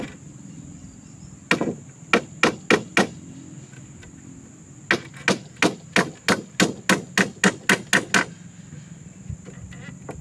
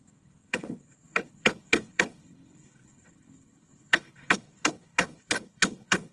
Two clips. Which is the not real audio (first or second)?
second